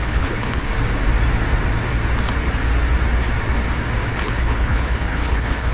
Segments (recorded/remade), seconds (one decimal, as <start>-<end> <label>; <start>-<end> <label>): 0.0-0.7 remade; 0.7-4.1 recorded; 4.1-5.7 remade